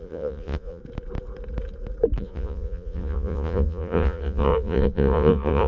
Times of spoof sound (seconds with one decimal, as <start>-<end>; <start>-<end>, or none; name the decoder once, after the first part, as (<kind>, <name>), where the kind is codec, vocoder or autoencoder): 0.0-0.8 (vocoder, Vocos); 2.2-5.7